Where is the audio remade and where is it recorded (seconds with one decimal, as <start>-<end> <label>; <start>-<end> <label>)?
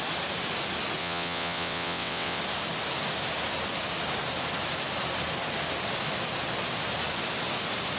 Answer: 0.0-1.0 recorded; 1.0-2.4 remade; 2.4-8.0 recorded